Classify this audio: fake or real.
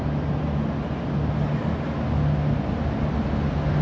real